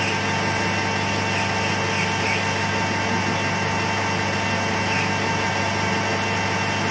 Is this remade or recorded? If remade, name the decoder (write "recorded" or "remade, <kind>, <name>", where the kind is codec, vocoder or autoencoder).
recorded